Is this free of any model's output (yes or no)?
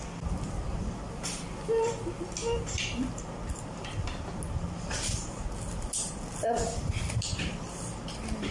yes